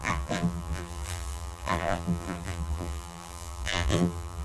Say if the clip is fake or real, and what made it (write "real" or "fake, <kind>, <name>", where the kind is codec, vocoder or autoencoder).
fake, vocoder, BigVGAN v2